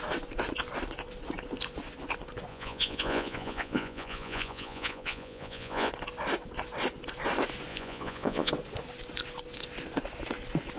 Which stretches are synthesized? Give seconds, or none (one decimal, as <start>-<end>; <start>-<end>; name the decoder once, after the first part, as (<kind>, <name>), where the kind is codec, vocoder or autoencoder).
2.5-5.9 (vocoder, Vocos); 7.7-8.5